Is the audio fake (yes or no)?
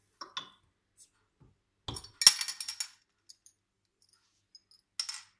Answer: no